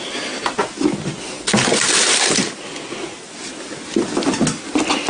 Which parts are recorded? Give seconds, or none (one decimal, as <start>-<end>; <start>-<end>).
0.0-5.1